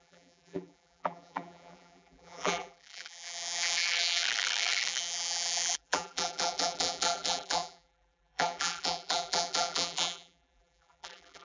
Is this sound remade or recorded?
remade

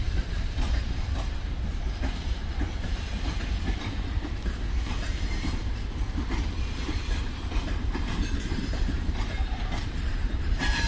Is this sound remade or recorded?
remade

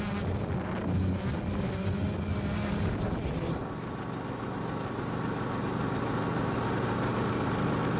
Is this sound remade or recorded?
recorded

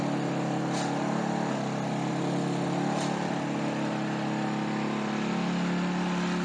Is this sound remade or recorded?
recorded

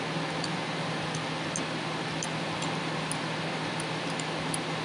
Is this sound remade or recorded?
recorded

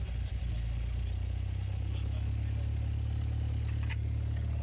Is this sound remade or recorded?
recorded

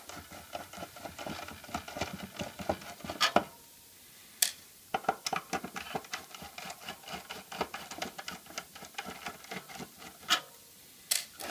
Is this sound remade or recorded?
recorded